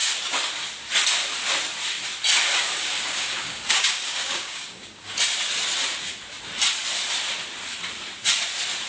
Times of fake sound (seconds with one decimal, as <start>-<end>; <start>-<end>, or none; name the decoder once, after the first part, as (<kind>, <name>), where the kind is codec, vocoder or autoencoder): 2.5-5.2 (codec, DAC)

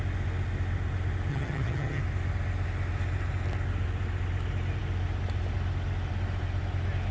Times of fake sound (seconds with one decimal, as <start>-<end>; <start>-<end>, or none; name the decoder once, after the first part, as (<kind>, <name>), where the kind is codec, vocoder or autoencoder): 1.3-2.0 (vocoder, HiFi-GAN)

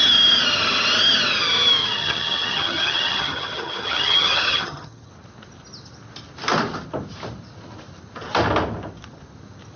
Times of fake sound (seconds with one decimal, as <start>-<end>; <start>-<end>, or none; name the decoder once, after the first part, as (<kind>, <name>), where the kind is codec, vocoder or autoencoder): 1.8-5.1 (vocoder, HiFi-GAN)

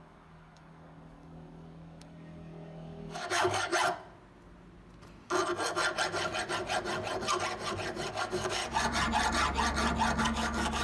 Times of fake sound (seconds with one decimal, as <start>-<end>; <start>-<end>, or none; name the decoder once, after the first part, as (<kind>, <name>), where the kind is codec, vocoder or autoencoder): 0.0-3.7 (codec, DAC); 8.1-8.6; 10.2-10.8